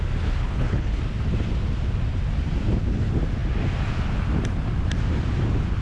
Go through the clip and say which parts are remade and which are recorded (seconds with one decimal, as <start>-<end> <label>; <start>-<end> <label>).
0.0-0.4 recorded; 0.4-1.0 remade; 1.0-5.8 recorded